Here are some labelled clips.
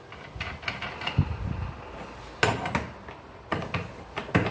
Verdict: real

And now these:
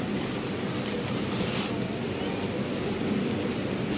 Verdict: real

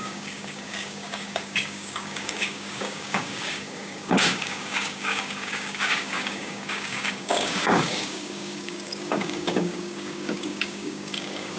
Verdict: fake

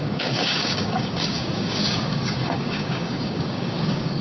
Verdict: fake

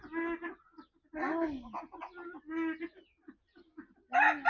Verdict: real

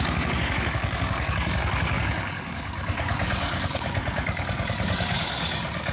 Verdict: fake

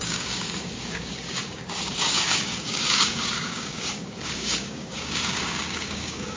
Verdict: fake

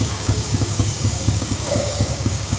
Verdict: fake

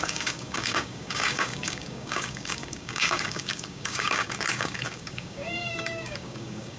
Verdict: fake